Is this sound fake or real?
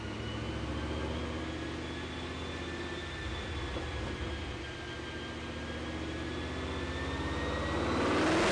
real